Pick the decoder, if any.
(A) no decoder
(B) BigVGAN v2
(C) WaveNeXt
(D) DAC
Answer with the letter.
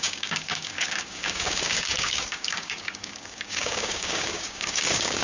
D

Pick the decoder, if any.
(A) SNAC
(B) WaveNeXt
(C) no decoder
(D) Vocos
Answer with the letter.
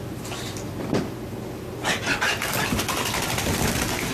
C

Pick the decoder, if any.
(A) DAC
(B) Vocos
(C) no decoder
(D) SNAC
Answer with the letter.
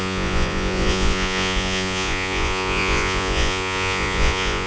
B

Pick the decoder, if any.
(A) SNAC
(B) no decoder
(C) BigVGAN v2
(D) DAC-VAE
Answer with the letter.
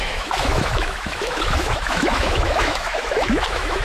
D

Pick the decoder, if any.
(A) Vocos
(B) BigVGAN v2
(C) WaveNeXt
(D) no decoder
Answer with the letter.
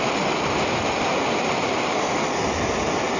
D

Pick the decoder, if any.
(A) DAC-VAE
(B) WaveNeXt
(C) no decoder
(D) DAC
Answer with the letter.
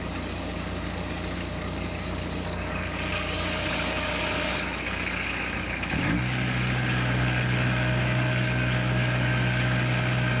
D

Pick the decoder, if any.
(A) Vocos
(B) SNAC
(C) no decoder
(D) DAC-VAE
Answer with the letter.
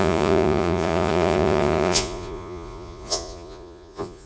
A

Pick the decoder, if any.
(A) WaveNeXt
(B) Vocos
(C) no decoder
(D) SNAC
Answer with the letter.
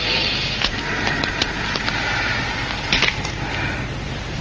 C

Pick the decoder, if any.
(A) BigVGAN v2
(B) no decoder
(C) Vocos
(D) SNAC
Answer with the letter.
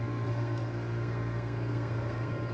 D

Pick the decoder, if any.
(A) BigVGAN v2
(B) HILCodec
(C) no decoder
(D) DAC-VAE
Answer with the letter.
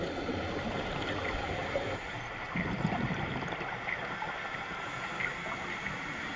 A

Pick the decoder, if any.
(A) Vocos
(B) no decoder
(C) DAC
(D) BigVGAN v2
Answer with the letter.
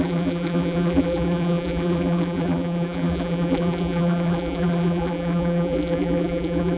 D